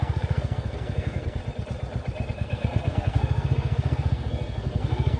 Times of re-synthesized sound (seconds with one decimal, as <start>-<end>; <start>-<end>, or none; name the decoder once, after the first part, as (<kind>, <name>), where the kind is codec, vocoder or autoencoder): 0.0-1.4 (codec, SNAC); 2.3-5.2